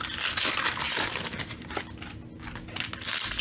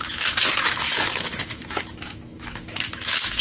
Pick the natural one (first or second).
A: first